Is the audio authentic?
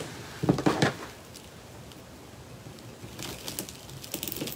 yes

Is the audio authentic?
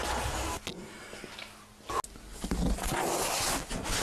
yes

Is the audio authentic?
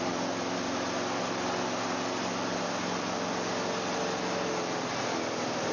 yes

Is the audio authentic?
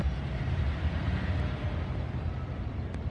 yes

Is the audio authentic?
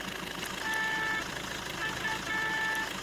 yes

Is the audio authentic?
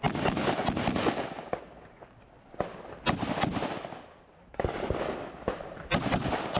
yes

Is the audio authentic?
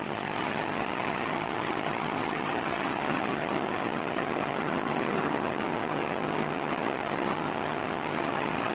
no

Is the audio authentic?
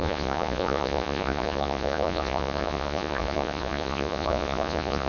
no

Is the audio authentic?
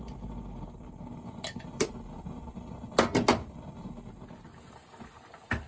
yes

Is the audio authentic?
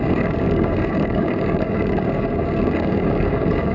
no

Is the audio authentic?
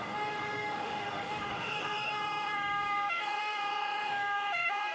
no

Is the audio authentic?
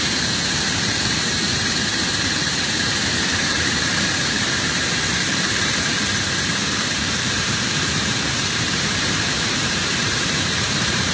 no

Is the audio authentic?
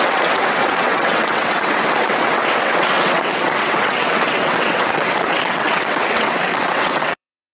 no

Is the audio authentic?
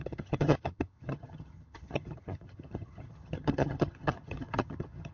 no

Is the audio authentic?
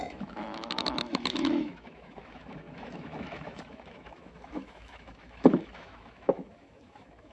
no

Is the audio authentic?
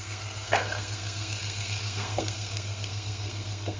no